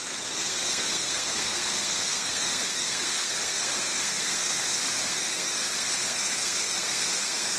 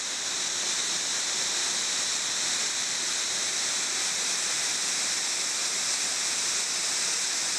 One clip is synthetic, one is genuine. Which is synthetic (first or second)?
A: first